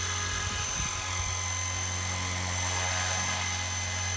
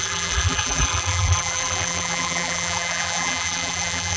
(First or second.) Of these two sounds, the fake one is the second